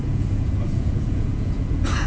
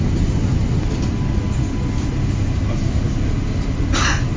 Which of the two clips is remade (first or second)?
first